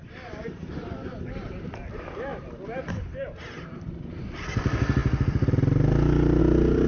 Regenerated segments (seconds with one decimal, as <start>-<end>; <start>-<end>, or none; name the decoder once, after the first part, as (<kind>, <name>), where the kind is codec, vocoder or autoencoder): none